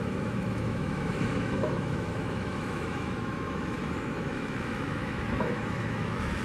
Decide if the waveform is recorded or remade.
remade